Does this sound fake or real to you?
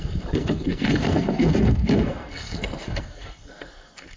fake